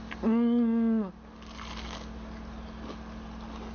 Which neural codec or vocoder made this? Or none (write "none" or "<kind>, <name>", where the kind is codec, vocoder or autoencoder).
none